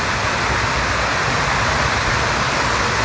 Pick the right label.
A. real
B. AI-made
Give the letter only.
A